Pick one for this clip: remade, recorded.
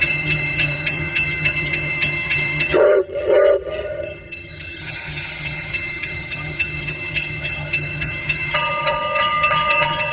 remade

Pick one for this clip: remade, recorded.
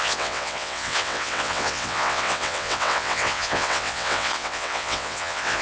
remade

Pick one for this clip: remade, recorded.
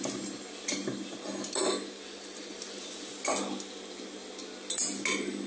recorded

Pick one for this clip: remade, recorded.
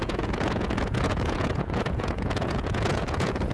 remade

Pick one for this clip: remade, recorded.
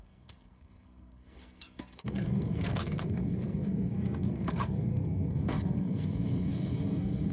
remade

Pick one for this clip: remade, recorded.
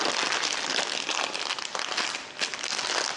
recorded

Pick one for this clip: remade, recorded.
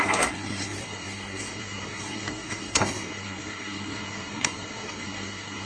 remade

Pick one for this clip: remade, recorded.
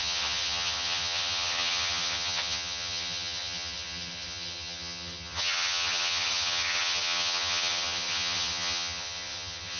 remade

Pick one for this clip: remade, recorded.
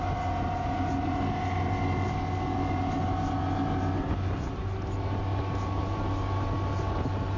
recorded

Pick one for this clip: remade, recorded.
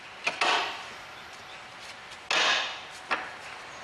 recorded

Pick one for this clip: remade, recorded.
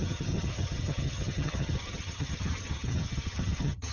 remade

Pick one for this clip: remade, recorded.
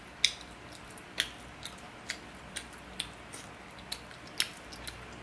recorded